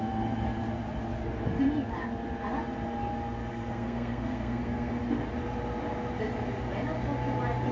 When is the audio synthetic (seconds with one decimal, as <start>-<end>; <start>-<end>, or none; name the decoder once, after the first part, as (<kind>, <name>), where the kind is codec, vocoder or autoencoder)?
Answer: 3.5-5.0 (codec, SNAC)